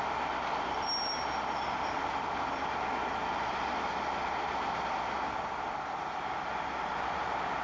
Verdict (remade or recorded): recorded